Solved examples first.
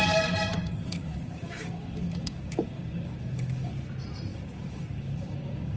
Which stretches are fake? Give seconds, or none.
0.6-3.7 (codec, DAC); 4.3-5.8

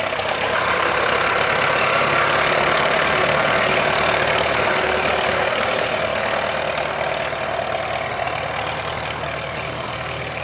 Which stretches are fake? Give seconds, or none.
0.0-1.1 (codec, DAC); 1.8-6.1; 8.9-10.4

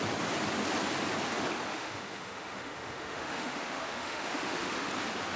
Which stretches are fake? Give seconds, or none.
1.7-4.9 (autoencoder, DAC-VAE)